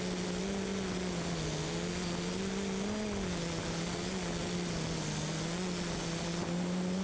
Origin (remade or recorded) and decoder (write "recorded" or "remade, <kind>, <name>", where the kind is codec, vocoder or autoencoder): recorded